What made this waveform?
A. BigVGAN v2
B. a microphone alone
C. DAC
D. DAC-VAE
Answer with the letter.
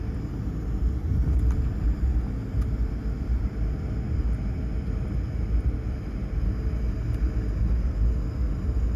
B